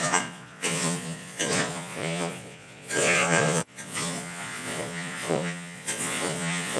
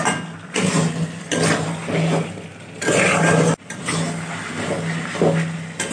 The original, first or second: second